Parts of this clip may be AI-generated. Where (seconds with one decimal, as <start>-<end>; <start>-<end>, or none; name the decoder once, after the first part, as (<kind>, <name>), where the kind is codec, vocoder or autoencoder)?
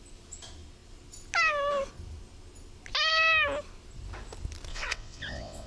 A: 4.7-5.7 (vocoder, WaveNeXt)